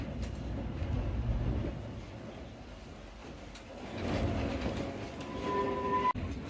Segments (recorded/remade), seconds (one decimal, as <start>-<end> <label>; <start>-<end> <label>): 0.0-6.5 recorded